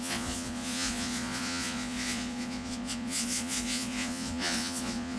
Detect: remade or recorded remade